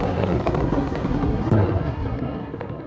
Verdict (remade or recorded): remade